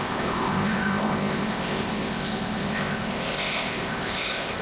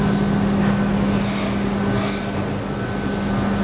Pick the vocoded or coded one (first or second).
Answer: first